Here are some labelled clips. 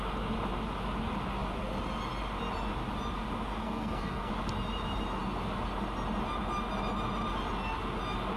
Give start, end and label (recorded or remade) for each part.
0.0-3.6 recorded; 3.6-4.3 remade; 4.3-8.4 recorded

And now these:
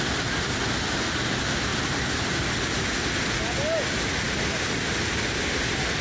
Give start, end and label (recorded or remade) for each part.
0.0-6.0 recorded